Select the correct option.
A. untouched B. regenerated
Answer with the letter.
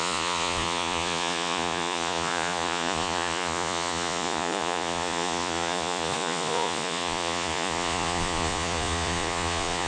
B